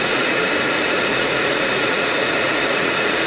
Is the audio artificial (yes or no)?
yes